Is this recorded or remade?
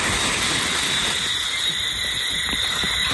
recorded